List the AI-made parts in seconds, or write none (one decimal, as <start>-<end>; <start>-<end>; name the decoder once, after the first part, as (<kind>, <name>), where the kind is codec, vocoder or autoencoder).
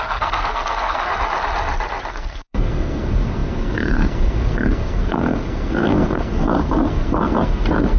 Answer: 0.0-1.1 (codec, SNAC); 2.1-8.0